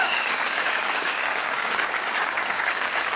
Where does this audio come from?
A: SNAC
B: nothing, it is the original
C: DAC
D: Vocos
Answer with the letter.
C